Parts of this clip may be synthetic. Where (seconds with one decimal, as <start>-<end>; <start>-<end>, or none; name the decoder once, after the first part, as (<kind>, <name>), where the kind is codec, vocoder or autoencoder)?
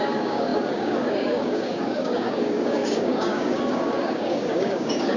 0.0-5.2 (codec, DAC)